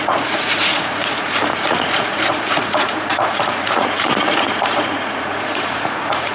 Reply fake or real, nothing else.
fake